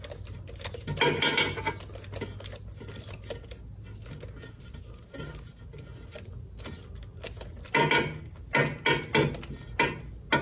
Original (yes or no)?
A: yes